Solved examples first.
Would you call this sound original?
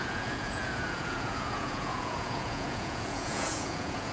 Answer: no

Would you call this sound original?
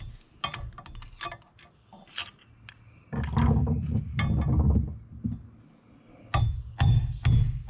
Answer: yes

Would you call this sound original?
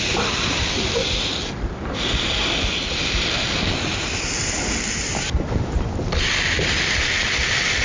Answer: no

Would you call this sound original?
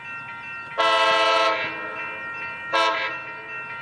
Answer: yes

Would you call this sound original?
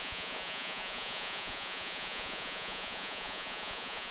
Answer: no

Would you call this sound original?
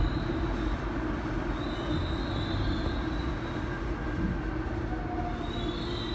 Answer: yes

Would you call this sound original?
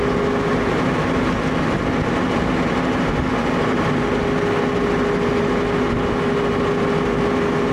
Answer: yes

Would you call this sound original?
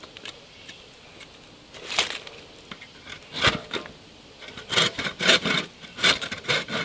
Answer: yes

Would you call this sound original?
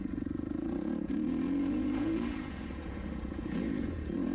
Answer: no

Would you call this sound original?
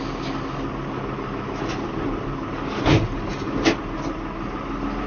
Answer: yes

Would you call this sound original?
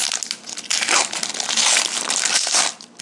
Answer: yes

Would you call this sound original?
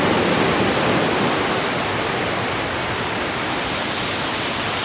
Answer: yes